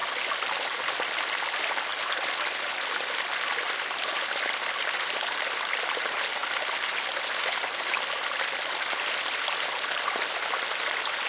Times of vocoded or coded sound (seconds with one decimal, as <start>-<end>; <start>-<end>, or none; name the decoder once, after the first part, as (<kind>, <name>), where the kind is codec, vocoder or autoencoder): none